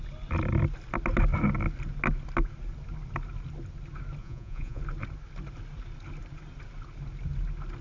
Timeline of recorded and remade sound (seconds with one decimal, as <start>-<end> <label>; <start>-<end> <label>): 0.0-4.2 recorded; 4.2-4.8 remade; 4.8-7.8 recorded